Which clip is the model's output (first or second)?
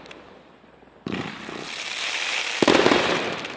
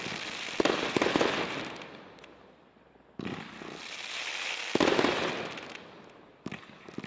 first